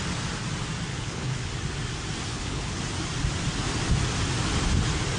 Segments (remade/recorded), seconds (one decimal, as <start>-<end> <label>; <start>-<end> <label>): 0.0-0.9 recorded; 0.9-1.5 remade; 1.5-2.3 recorded; 2.3-2.8 remade; 2.8-5.2 recorded